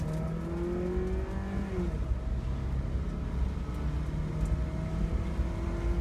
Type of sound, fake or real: real